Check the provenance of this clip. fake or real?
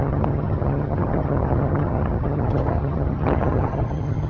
fake